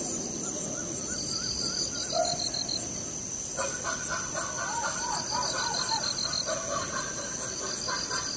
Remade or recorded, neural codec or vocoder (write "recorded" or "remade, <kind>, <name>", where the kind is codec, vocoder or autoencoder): recorded